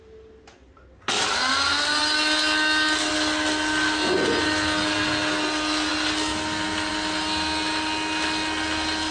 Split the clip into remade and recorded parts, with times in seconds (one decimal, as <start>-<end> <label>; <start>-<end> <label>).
0.0-9.1 recorded